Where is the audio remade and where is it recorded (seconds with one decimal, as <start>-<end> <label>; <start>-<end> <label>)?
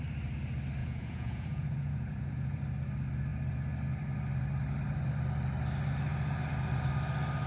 0.0-0.8 recorded; 0.8-2.6 remade; 2.6-7.5 recorded